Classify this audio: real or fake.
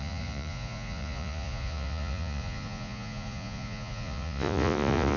fake